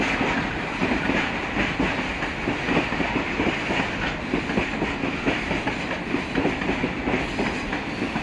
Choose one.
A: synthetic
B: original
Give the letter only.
B